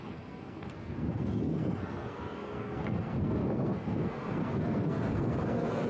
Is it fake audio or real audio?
fake